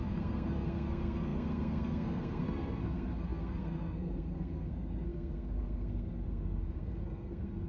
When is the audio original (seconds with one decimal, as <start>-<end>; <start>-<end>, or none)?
none